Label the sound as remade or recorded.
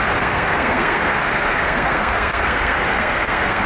remade